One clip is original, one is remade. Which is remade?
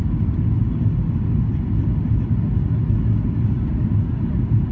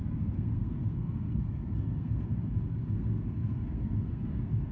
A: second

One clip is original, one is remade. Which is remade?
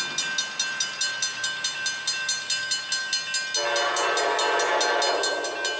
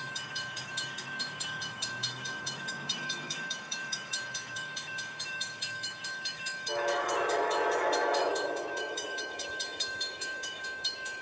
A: second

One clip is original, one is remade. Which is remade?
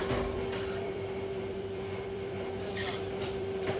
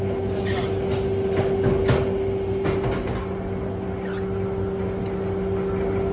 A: first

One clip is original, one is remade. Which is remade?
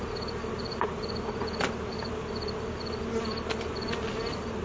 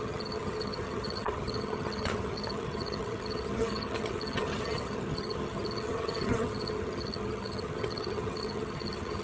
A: second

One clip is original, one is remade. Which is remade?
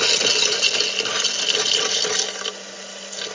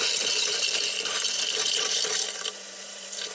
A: second